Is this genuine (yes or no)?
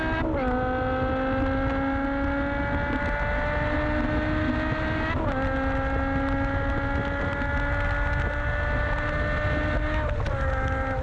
yes